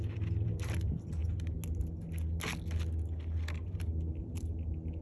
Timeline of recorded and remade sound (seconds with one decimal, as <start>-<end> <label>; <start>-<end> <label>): 0.0-1.2 remade; 1.2-4.2 recorded; 4.2-5.0 remade